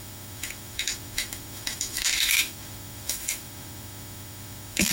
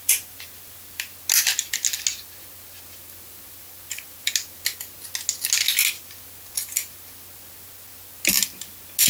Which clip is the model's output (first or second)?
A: first